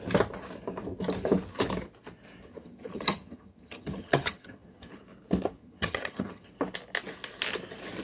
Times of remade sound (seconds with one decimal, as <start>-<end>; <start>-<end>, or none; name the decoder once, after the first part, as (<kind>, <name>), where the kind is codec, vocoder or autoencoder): 2.5-4.9 (vocoder, HiFi-GAN); 5.6-6.5

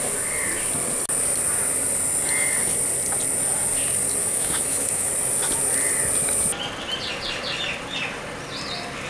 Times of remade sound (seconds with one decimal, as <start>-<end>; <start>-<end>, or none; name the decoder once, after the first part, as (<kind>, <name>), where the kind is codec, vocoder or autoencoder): 4.2-5.1 (autoencoder, DAC-VAE)

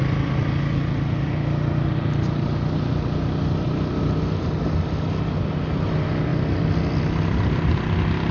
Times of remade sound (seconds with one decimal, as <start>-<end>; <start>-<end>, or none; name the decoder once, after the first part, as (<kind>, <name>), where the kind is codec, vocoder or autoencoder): none

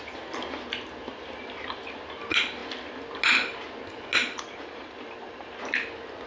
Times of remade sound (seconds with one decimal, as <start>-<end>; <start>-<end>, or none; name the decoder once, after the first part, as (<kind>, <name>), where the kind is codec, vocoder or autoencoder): 4.2-5.6 (vocoder, BigVGAN v2)

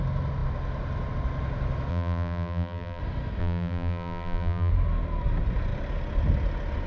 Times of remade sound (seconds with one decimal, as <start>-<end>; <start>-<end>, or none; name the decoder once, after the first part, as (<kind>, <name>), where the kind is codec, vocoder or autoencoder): 1.9-3.0 (vocoder, BigVGAN v2); 3.4-4.7